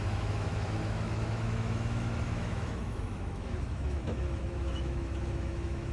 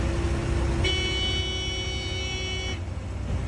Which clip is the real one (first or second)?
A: second